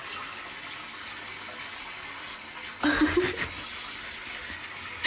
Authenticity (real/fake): real